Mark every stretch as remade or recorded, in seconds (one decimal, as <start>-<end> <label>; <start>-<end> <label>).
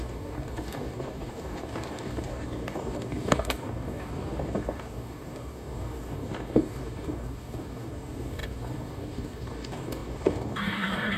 0.0-11.2 remade